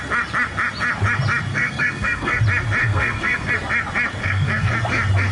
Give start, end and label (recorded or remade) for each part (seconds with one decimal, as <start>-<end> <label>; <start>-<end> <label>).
0.0-1.5 recorded; 1.5-2.4 remade; 2.4-2.8 recorded; 2.8-3.5 remade; 3.5-4.2 recorded; 4.2-4.7 remade; 4.7-5.3 recorded